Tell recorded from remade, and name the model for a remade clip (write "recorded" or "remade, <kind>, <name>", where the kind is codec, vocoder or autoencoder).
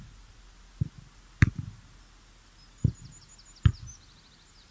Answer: recorded